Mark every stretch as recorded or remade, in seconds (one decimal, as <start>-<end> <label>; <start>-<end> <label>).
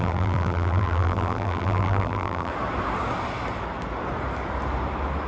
0.0-2.5 remade; 2.5-5.3 recorded